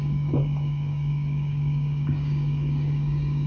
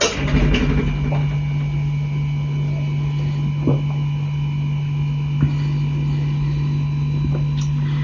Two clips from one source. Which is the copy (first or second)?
first